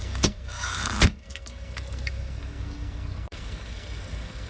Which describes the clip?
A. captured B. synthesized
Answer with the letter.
B